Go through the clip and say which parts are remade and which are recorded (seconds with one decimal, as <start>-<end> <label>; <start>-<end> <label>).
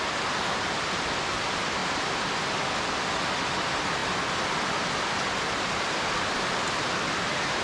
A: 0.0-1.8 recorded; 1.8-3.1 remade; 3.1-7.6 recorded